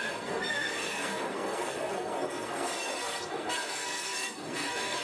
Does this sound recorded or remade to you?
remade